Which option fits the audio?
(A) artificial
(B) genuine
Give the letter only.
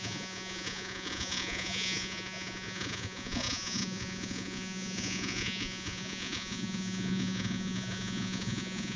A